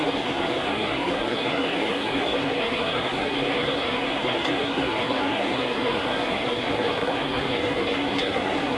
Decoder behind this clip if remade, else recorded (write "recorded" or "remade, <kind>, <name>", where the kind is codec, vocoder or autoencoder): remade, codec, SNAC